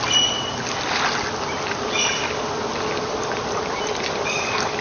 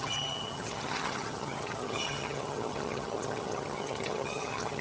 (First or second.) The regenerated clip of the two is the second